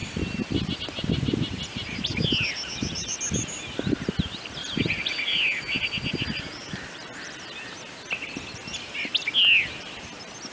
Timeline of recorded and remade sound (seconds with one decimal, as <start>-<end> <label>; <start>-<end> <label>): 0.0-10.5 recorded